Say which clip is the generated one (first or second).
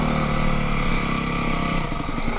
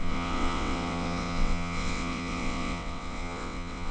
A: second